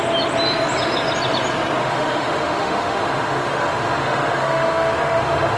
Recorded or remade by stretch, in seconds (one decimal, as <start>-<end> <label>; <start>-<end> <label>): 0.0-1.8 recorded; 1.8-5.6 remade

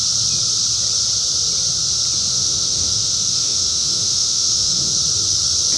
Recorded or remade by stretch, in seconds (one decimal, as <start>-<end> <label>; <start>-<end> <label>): 0.0-2.3 recorded; 2.3-4.8 remade; 4.8-5.8 recorded

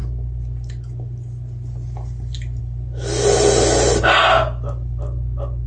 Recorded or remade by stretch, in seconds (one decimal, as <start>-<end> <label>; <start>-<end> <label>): 0.0-5.7 recorded

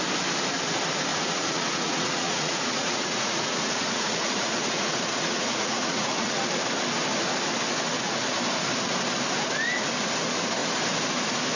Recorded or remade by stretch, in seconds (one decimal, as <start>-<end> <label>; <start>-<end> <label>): 0.0-1.1 recorded; 1.1-6.4 remade; 6.4-11.6 recorded

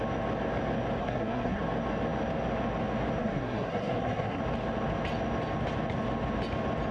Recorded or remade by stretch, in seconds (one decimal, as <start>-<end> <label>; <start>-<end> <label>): 0.0-1.0 recorded; 1.0-1.6 remade; 1.6-3.2 recorded; 3.2-4.4 remade; 4.4-6.9 recorded

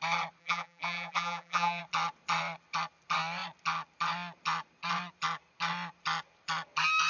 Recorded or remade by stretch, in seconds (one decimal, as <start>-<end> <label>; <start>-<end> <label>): 0.0-0.4 recorded; 0.4-1.8 remade; 1.8-7.1 recorded

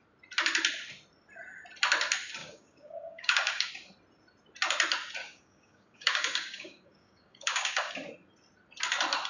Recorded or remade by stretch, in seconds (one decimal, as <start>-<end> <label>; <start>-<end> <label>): 0.0-2.4 recorded; 2.4-3.7 remade; 3.7-5.2 recorded; 5.2-7.9 remade; 7.9-9.3 recorded

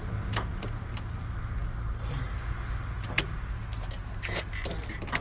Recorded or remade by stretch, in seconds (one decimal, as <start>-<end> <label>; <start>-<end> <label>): 0.0-5.2 recorded